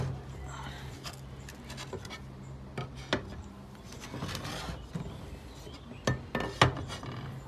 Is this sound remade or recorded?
recorded